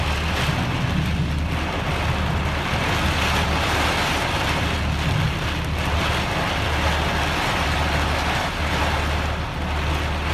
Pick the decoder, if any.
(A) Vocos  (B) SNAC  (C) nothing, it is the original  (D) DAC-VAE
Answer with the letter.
C